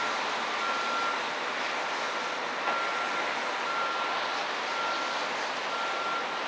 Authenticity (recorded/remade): recorded